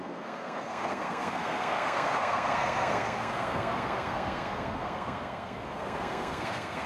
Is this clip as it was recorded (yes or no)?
no